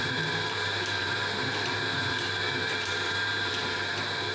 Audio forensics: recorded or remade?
remade